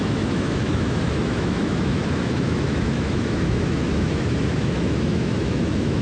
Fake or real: fake